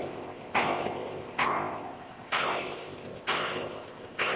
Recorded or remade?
remade